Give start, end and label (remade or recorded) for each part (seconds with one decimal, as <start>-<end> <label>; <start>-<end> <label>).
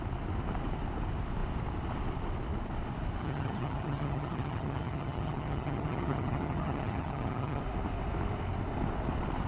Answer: 0.0-3.2 recorded; 3.2-7.6 remade; 7.6-9.5 recorded